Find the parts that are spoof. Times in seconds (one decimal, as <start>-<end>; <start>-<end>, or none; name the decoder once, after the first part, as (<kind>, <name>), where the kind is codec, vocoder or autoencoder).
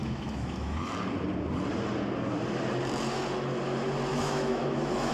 0.0-0.9 (autoencoder, DAC-VAE); 4.1-5.1